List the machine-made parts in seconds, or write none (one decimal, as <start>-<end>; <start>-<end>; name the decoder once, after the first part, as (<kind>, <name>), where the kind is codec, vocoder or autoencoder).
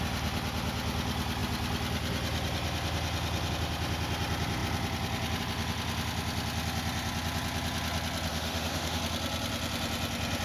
8.3-9.0 (autoencoder, DAC-VAE)